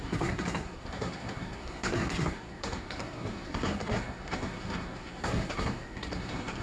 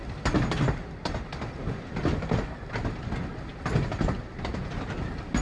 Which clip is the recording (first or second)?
second